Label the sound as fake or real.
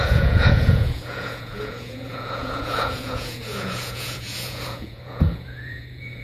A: fake